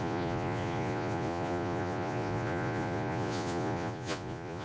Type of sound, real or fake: fake